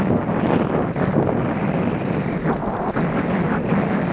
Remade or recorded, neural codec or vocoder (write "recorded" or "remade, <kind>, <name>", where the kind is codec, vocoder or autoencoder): recorded